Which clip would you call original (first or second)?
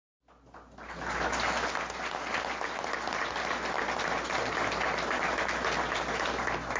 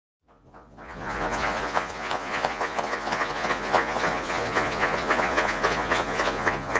first